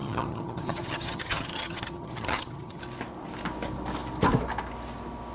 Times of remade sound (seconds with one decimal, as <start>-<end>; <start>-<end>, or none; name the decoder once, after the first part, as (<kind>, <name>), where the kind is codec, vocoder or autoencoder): 0.0-2.8 (vocoder, HiFi-GAN)